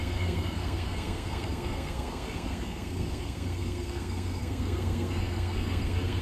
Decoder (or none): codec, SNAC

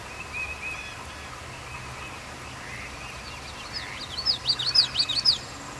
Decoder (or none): none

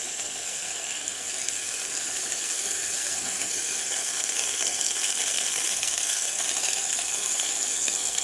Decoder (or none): codec, SNAC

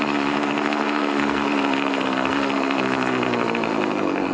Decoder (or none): codec, SNAC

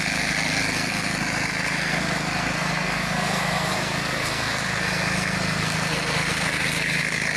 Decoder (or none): codec, SNAC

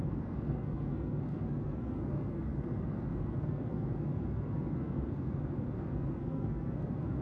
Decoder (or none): codec, SNAC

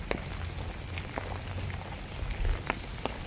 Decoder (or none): none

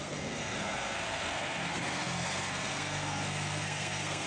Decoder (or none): codec, SNAC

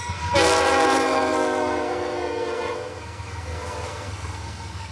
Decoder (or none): codec, SNAC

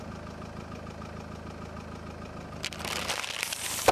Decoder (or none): none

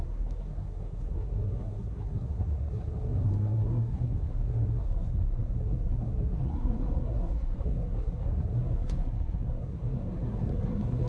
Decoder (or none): codec, SNAC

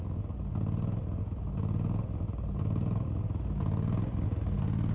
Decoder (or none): none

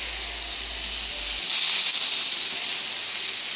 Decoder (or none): none